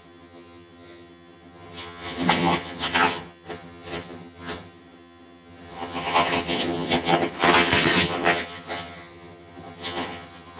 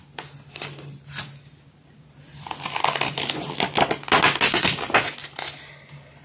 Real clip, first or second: second